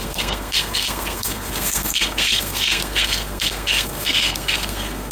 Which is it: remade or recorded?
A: remade